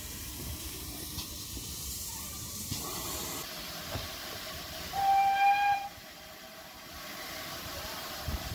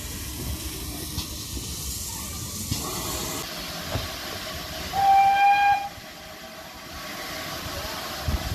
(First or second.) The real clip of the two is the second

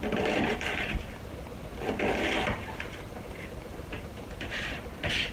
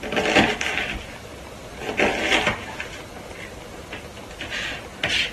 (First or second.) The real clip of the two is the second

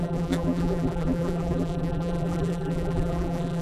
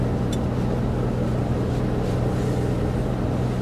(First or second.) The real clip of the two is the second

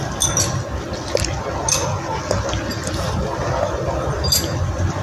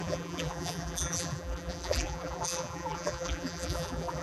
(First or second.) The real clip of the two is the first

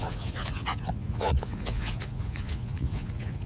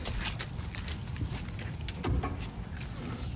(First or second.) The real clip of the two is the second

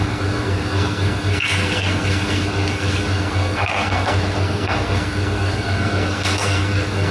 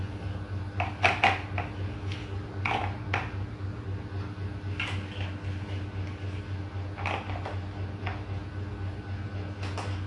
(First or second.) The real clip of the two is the second